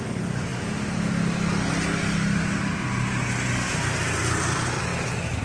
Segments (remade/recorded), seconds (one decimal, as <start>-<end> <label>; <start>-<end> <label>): 0.0-5.4 recorded